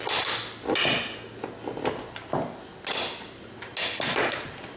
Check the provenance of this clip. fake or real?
real